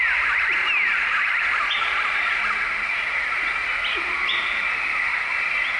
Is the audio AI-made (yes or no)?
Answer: no